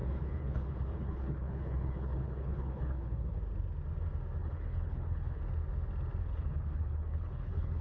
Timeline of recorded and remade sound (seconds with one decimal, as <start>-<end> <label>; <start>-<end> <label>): 0.0-3.4 remade; 3.4-4.4 recorded; 4.4-5.4 remade; 5.4-6.2 recorded; 6.2-7.8 remade